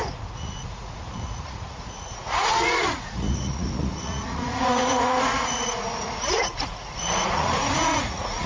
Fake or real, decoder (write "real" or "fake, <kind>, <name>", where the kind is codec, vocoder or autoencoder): fake, vocoder, Vocos